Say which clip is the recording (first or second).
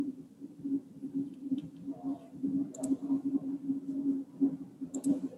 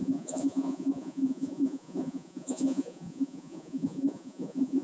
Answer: first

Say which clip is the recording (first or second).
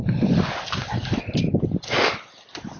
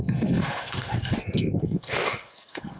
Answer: first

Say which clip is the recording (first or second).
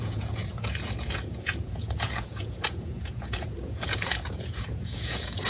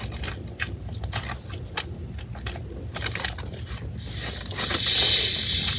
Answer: second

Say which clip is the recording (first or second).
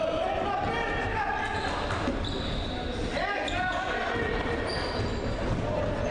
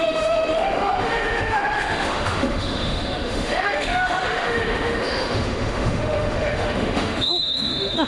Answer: first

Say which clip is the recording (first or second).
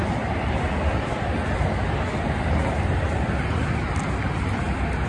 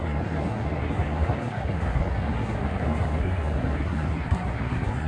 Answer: first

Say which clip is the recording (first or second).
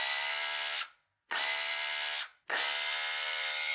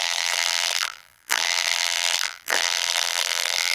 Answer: first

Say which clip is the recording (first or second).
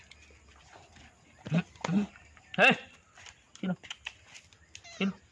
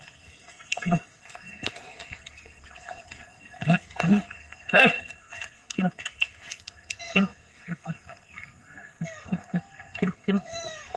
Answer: first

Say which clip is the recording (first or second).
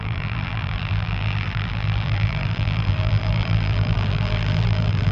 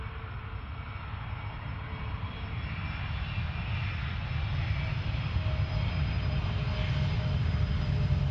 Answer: second